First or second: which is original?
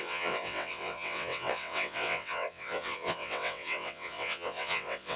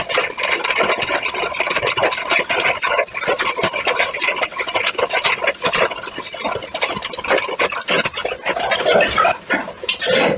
second